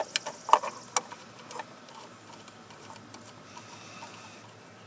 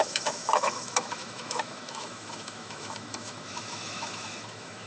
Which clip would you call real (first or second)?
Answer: first